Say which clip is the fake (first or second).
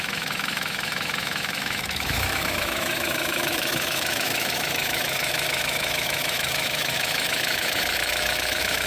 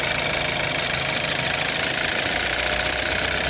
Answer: first